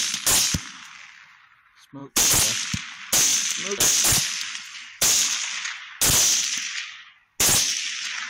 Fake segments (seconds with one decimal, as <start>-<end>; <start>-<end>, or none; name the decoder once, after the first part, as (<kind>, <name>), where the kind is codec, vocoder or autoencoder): 2.0-2.6 (vocoder, BigVGAN v2); 3.3-5.7